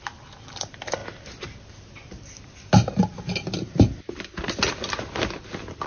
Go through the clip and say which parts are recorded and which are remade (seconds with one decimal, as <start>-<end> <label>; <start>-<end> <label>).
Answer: 0.0-5.9 recorded